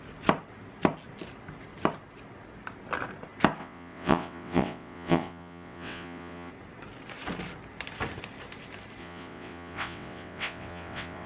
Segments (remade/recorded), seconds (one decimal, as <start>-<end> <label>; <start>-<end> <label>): 0.0-3.6 recorded; 3.6-6.5 remade; 6.5-9.0 recorded; 9.0-11.3 remade